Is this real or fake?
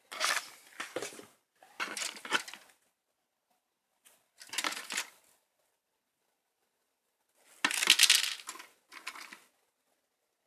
real